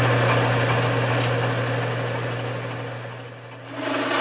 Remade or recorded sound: recorded